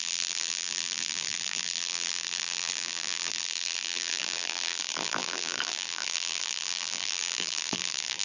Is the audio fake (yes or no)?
yes